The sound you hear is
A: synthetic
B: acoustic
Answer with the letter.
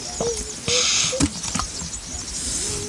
B